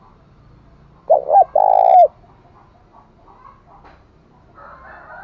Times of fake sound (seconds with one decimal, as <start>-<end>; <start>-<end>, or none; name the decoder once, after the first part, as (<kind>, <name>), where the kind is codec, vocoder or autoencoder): none